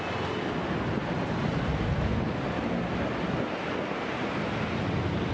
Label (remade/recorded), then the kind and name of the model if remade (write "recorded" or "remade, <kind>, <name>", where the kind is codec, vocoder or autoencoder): recorded